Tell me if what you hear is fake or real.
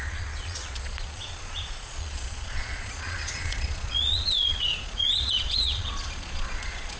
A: fake